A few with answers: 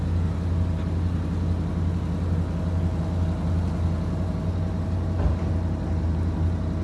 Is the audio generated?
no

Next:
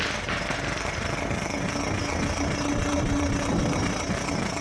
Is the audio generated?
no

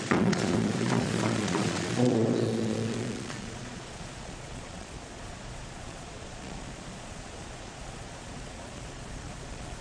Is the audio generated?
yes